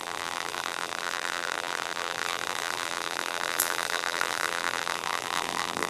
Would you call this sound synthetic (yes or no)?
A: yes